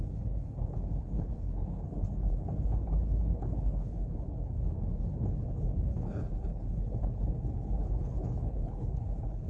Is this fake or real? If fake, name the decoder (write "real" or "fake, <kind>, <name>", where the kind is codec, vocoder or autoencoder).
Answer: fake, codec, HILCodec